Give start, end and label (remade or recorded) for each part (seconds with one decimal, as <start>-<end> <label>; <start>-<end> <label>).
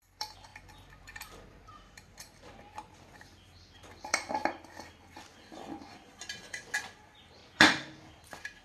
0.0-4.4 remade; 4.4-5.1 recorded; 5.1-7.4 remade; 7.4-8.6 recorded